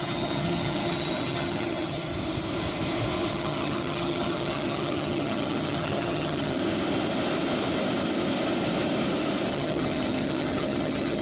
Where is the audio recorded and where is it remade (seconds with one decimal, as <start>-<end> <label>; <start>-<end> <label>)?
0.0-2.1 remade; 2.1-3.3 recorded; 3.3-6.6 remade; 6.6-9.5 recorded; 9.5-11.2 remade